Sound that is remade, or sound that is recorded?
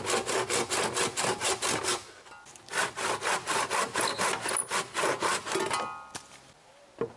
recorded